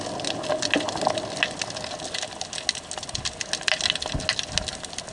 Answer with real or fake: real